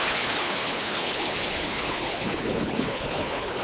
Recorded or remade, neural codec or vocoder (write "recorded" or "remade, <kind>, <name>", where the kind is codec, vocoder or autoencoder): remade, codec, HILCodec